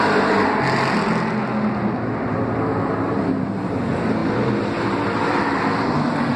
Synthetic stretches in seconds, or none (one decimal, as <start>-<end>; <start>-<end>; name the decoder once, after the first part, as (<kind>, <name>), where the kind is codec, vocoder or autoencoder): none